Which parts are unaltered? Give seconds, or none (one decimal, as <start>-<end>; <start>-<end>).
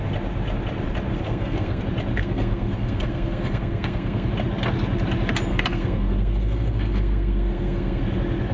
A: 0.0-1.1; 1.8-2.2; 4.3-5.5; 8.0-8.5